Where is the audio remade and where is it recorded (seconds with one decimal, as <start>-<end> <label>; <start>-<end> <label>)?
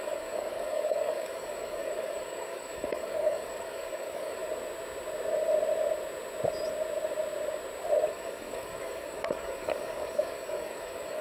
0.0-4.4 remade; 4.4-8.1 recorded; 8.1-11.2 remade